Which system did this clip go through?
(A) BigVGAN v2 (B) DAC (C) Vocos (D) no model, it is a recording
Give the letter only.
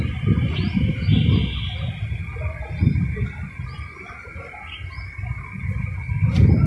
D